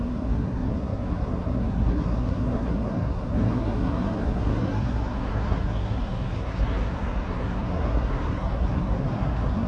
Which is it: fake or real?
fake